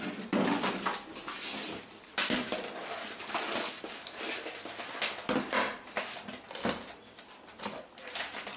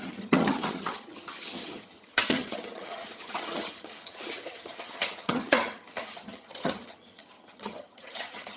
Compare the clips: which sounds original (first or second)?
first